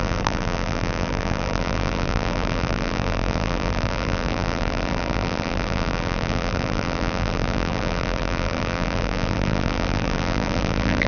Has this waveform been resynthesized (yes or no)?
yes